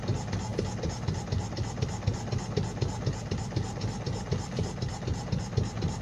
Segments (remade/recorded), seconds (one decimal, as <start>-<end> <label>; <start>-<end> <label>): 0.0-6.0 recorded